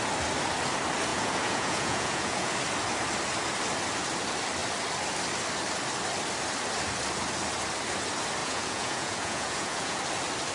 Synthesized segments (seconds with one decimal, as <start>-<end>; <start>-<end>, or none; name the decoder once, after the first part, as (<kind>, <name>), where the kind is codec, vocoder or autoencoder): 1.1-2.5 (vocoder, Vocos); 8.4-10.0